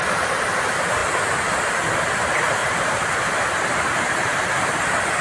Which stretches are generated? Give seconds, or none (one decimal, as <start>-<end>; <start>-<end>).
2.6-4.8